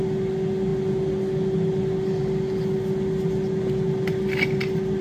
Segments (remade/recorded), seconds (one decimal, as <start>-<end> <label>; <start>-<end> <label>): 0.0-5.0 recorded